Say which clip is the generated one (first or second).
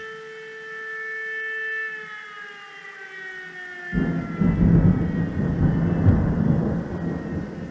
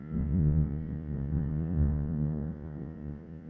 second